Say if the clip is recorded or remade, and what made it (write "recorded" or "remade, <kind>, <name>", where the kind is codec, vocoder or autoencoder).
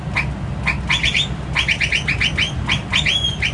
recorded